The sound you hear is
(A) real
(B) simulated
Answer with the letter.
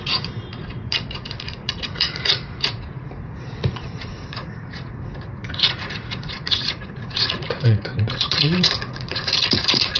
B